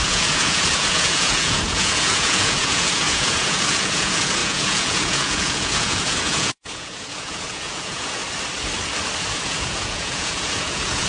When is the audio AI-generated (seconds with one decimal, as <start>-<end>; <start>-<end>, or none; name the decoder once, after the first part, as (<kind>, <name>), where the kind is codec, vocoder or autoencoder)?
0.0-8.2 (vocoder, Vocos); 9.2-11.1